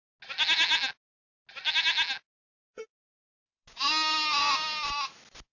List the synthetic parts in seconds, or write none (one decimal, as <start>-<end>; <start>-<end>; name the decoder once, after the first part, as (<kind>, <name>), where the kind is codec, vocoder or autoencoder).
none

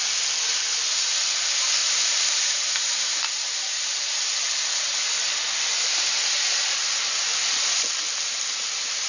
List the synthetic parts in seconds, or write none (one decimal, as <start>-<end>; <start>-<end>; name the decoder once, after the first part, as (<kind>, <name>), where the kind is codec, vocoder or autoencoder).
1.8-3.7 (vocoder, BigVGAN v2)